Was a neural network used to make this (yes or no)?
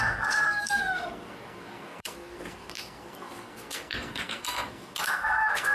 yes